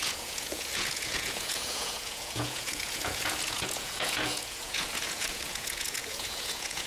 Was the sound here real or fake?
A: fake